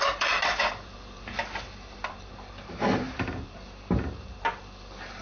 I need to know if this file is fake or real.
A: fake